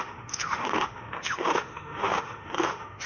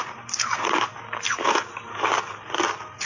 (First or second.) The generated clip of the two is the first